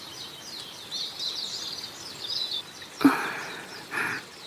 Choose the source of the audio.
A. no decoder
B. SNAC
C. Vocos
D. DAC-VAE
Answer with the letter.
A